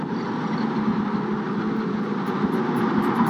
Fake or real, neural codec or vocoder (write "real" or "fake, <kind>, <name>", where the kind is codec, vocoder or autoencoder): real